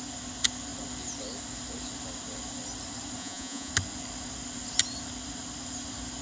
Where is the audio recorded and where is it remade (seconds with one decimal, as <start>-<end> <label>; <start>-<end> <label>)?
0.0-3.2 recorded; 3.2-3.7 remade; 3.7-6.2 recorded